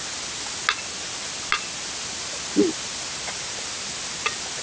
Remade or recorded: recorded